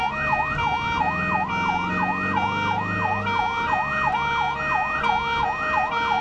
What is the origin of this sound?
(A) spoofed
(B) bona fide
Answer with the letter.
B